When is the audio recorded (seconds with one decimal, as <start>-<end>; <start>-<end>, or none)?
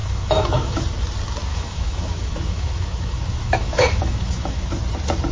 0.8-1.5; 4.7-5.3